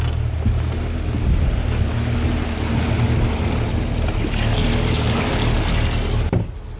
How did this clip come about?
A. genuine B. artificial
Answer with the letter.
A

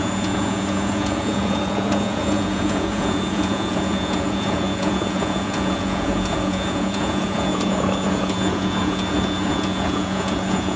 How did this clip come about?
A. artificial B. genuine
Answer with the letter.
A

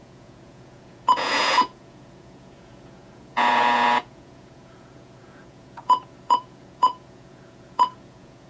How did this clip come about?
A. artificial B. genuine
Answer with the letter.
A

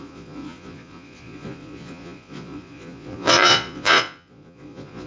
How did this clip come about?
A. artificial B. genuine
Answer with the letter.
A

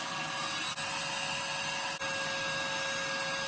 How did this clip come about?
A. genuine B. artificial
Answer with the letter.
A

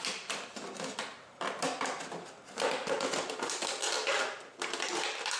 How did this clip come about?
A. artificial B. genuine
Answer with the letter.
B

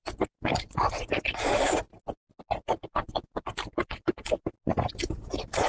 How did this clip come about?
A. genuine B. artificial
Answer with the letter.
A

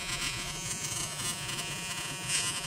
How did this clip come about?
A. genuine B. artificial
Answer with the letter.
B